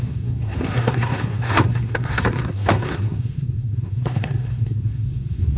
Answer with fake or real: fake